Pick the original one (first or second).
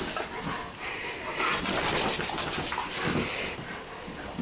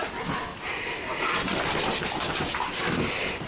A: first